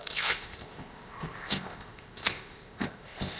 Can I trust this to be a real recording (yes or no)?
no